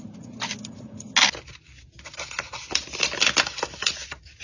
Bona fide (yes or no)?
yes